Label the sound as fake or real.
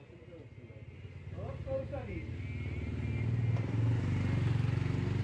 real